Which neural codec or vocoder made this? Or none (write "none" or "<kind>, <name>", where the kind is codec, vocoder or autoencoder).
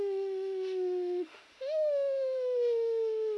autoencoder, DAC-VAE